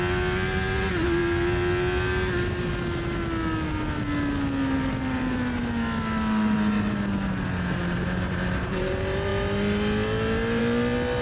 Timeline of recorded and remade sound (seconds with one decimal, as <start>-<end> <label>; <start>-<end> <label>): 0.0-11.2 recorded